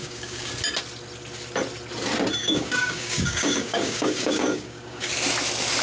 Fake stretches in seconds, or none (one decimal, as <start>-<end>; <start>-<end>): 0.0-0.5; 2.4-5.1